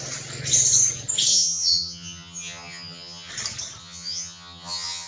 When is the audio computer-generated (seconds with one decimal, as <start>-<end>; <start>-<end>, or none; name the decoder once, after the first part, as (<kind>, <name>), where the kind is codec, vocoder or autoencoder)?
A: 1.3-3.3 (vocoder, HiFi-GAN); 3.8-5.1